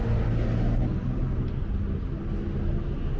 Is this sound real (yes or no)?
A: yes